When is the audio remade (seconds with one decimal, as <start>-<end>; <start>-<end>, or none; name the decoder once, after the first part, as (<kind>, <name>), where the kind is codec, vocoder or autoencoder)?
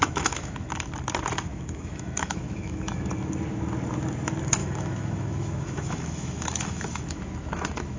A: 0.0-0.7 (autoencoder, DAC-VAE); 1.5-3.0; 4.6-8.0